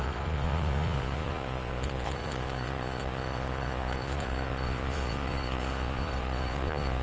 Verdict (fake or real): fake